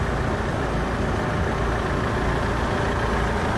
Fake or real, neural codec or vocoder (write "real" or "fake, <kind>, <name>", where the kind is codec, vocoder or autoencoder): real